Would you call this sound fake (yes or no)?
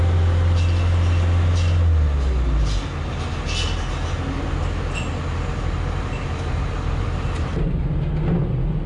no